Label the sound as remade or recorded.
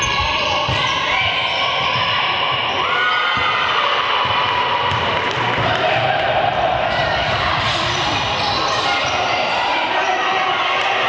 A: remade